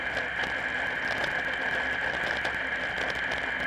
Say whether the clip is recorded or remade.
recorded